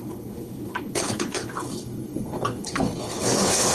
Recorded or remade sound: remade